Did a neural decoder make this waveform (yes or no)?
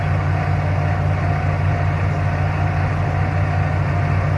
no